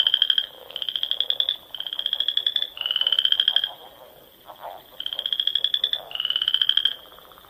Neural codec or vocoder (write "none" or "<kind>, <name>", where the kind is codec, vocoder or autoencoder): vocoder, BigVGAN v2